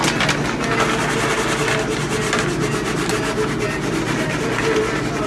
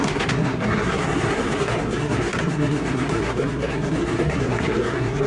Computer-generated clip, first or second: second